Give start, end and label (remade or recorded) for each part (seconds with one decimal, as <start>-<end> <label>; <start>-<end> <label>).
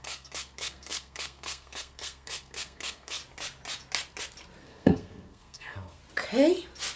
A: 0.0-3.2 remade; 3.2-4.6 recorded; 4.6-6.0 remade; 6.0-7.0 recorded